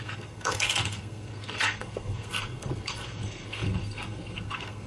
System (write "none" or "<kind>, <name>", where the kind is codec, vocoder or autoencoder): codec, SNAC